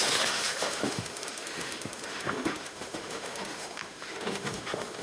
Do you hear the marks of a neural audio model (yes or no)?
yes